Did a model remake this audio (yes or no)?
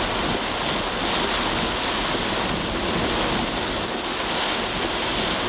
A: no